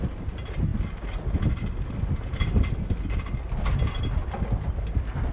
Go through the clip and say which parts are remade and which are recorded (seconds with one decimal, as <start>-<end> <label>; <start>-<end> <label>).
0.0-5.3 recorded